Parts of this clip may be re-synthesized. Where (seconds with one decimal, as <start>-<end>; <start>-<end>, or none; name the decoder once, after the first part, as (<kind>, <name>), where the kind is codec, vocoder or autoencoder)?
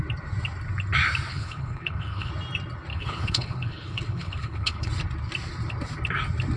1.3-2.3 (codec, HILCodec); 2.9-4.9